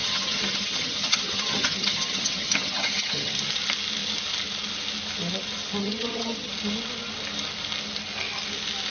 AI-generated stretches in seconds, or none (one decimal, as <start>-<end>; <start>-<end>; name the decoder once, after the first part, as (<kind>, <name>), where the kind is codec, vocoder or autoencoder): 0.0-3.3 (vocoder, HiFi-GAN); 5.8-6.5